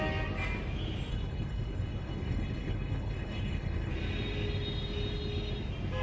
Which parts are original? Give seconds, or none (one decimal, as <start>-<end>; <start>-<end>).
0.0-1.1; 3.9-6.0